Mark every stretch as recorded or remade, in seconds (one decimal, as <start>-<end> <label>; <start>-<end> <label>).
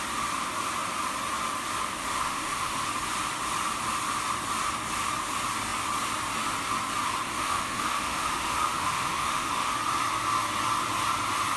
0.0-2.1 recorded; 2.1-2.9 remade; 2.9-7.3 recorded; 7.3-9.7 remade; 9.7-11.6 recorded